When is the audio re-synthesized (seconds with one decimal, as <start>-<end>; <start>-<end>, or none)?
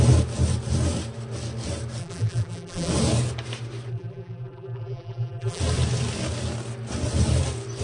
2.0-2.9; 3.9-5.6